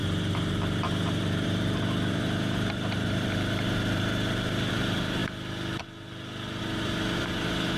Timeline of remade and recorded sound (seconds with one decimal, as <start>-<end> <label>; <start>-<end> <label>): 0.0-5.2 remade; 5.2-6.6 recorded; 6.6-7.8 remade